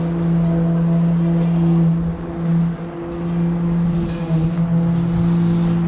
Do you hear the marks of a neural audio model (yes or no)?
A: no